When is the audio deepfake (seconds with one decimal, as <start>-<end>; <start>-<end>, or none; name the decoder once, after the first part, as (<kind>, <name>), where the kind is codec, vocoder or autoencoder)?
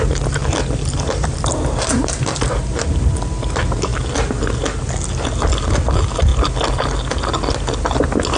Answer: 0.4-3.1 (vocoder, BigVGAN v2)